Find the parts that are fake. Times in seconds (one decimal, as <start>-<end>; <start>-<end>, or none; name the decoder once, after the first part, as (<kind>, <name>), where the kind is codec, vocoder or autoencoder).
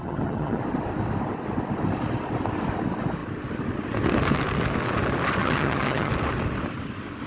0.0-0.6 (vocoder, HiFi-GAN); 5.4-6.1